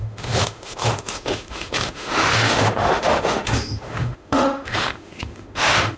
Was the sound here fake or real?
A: fake